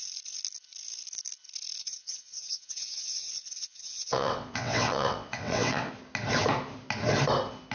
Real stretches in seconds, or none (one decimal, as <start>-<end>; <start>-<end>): 0.0-1.8; 5.9-7.7